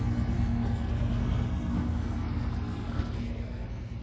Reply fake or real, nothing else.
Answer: fake